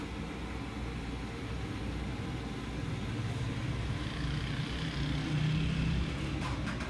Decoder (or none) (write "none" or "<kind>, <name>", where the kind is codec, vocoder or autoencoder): none